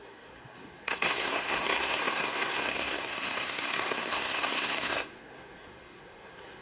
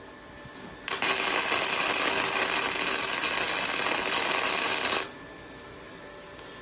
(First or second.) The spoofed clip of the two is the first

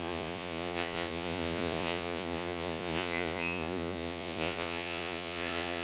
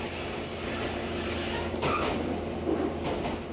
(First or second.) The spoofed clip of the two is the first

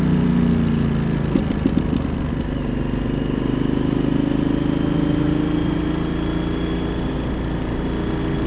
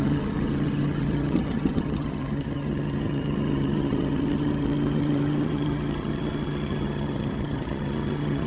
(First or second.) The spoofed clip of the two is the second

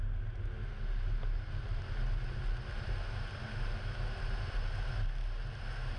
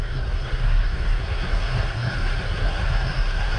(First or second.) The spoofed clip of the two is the second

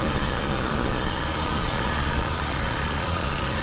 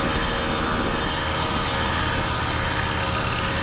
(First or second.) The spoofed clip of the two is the first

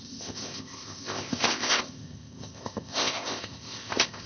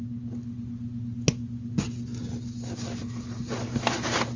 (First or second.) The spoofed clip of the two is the first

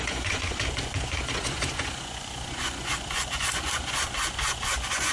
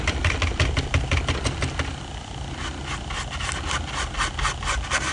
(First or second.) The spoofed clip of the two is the first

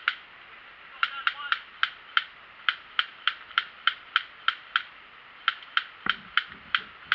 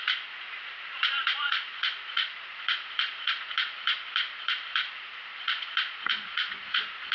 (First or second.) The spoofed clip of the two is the second